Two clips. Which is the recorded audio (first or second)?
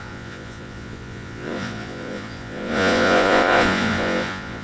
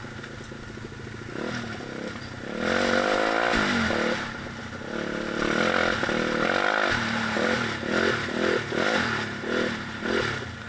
second